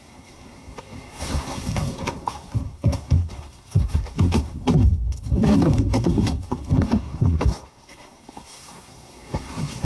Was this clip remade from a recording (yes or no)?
yes